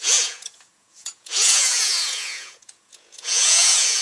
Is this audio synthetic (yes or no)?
yes